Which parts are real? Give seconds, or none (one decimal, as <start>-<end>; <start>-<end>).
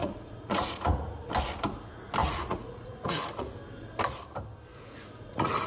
1.3-2.2; 3.6-4.7